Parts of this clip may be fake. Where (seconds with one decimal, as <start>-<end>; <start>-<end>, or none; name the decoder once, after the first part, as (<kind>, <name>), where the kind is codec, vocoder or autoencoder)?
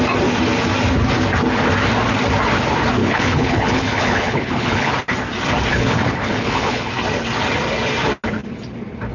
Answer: 3.0-4.9 (codec, HILCodec); 5.7-6.9